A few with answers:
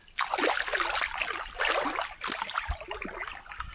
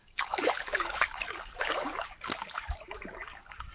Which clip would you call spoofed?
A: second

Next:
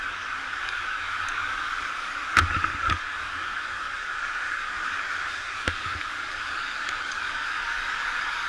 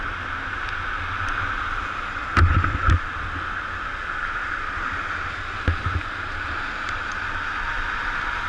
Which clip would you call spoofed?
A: first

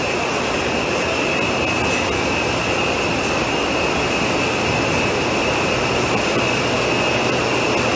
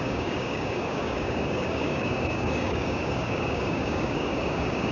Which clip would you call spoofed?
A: second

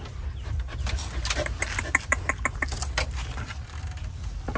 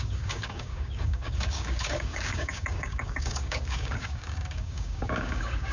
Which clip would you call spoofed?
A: second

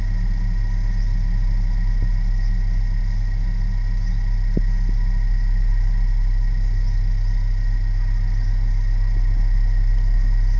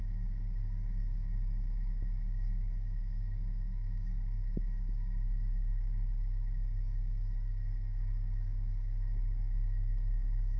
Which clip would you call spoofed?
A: second